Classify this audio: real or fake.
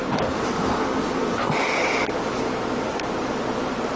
real